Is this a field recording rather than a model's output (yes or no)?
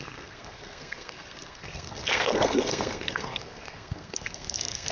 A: no